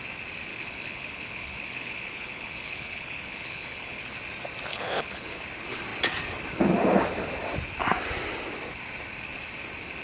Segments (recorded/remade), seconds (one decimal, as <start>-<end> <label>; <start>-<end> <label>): 0.0-0.5 recorded; 0.5-4.0 remade; 4.0-4.7 recorded; 4.7-5.4 remade; 5.4-10.0 recorded